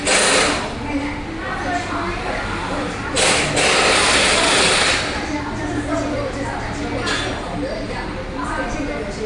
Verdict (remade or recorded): recorded